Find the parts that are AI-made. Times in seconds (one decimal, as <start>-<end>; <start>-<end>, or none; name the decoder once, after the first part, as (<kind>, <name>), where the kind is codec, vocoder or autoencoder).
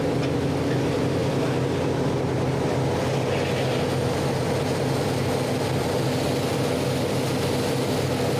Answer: none